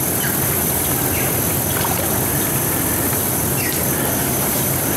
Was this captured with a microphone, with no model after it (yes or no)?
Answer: yes